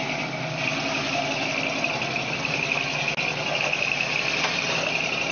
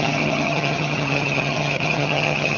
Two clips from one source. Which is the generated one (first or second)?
second